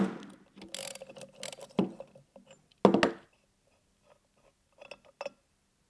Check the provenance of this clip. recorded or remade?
recorded